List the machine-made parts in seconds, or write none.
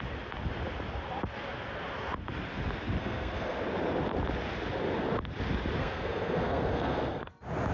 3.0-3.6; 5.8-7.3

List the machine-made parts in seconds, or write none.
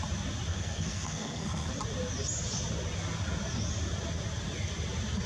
0.5-1.7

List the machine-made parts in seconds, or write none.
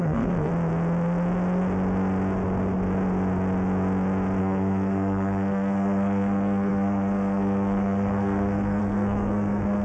0.0-0.5; 4.4-9.8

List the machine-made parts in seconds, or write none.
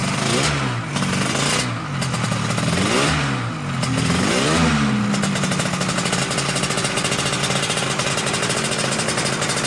none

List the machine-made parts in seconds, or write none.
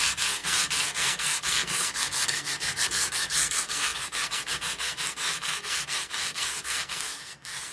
0.0-7.7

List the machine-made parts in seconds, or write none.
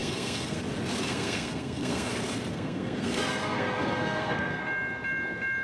0.0-0.6; 1.1-2.1; 2.5-4.6